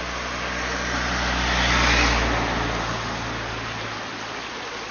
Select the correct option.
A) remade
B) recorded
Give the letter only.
B